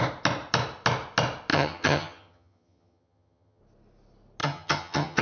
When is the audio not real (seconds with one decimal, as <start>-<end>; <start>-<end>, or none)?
1.5-3.6; 4.4-5.2